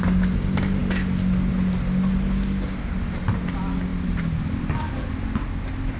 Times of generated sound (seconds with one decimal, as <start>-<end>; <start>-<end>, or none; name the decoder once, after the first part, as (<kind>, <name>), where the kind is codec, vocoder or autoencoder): none